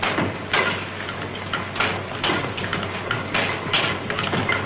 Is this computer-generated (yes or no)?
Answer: no